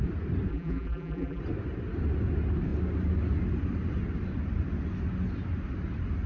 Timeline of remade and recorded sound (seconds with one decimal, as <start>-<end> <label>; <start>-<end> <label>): 0.0-0.5 recorded; 0.5-1.4 remade; 1.4-6.3 recorded